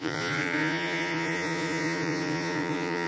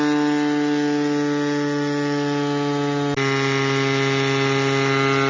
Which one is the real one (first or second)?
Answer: second